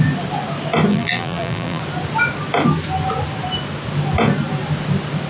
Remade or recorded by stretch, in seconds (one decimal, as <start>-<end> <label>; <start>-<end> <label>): 0.0-0.9 recorded; 0.9-1.8 remade; 1.8-5.3 recorded